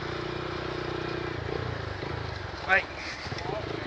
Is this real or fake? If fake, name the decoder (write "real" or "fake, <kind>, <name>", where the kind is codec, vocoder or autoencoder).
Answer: real